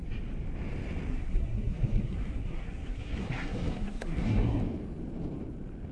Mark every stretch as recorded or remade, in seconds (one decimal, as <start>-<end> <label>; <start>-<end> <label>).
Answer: 0.0-1.1 recorded; 1.1-4.6 remade; 4.6-5.9 recorded